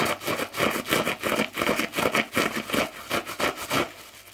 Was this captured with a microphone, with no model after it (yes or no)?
yes